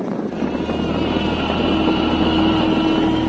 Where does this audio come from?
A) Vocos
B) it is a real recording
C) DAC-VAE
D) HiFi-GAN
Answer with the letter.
B